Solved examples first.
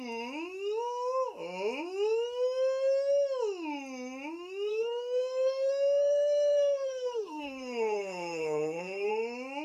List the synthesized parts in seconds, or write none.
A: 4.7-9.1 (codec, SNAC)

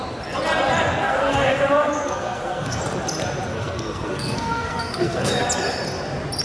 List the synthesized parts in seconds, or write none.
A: 0.9-2.8 (codec, SNAC); 3.5-5.3

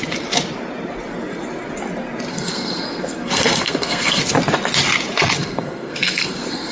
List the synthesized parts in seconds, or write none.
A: 2.3-4.2 (codec, SNAC); 5.4-6.7

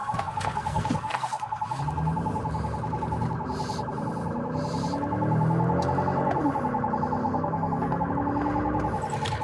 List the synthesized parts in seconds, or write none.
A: 0.0-1.8 (codec, SNAC); 7.2-8.1

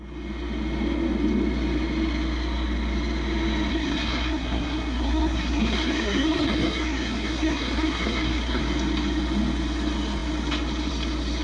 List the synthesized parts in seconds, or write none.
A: 3.7-8.6 (codec, SNAC)

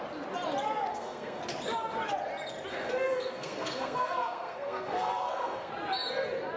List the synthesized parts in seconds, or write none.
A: 0.9-1.4 (codec, SNAC); 2.7-5.7

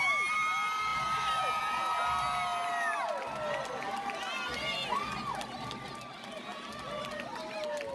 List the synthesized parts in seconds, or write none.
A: none

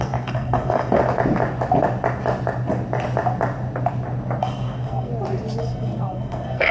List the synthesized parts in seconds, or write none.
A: 0.0-1.0 (codec, SNAC); 4.4-5.1; 5.6-6.7